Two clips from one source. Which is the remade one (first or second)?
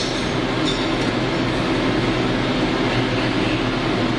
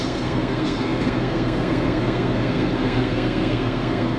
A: second